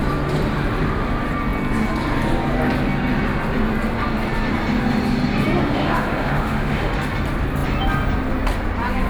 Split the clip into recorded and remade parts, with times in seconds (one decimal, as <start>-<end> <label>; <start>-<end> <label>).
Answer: 0.0-5.7 recorded; 5.7-6.9 remade; 6.9-9.1 recorded